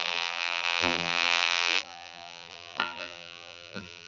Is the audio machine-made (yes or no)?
yes